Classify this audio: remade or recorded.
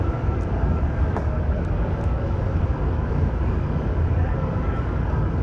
remade